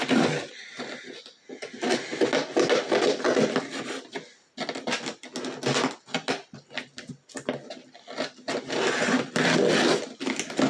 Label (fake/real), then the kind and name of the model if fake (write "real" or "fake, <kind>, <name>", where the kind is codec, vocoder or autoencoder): real